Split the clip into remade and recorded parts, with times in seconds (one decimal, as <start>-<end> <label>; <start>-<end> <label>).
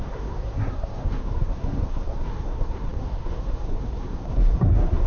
0.0-5.1 remade